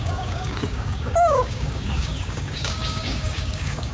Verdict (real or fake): fake